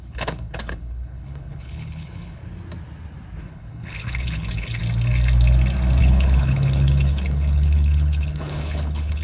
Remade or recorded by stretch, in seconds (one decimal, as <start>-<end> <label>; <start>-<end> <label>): 0.0-2.4 remade; 2.4-3.4 recorded; 3.4-4.8 remade; 4.8-6.0 recorded; 6.0-9.2 remade